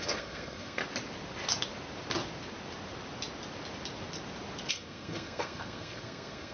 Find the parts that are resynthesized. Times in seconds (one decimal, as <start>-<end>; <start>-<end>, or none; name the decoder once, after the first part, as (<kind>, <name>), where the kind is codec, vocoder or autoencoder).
0.0-0.8 (codec, SNAC); 4.7-6.5